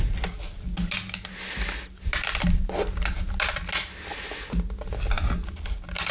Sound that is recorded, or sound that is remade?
recorded